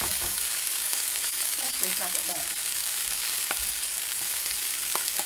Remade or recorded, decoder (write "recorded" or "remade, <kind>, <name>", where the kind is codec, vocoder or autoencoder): remade, codec, DAC